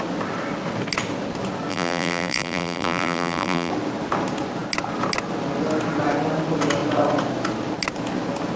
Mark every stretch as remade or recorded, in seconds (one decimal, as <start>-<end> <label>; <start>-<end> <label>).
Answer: 0.0-1.7 recorded; 1.7-3.7 remade; 3.7-8.6 recorded